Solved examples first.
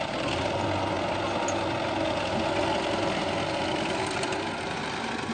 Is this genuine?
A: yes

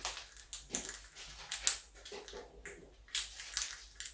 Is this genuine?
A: yes